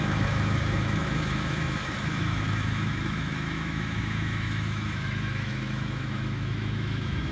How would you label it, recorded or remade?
remade